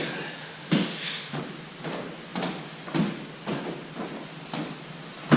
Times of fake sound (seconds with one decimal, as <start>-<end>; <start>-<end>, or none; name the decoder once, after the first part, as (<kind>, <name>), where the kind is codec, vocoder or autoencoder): 0.4-1.4 (autoencoder, DAC-VAE)